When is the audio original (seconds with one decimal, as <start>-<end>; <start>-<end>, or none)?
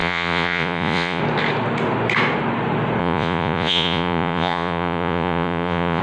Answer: 1.2-3.0